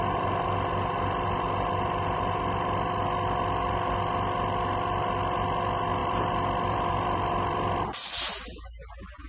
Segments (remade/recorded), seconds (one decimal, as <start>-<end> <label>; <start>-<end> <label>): 0.0-6.0 recorded; 6.0-8.1 remade; 8.1-9.3 recorded